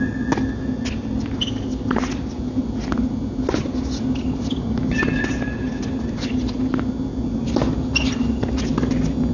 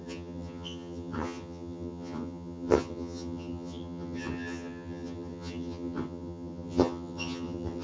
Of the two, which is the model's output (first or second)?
second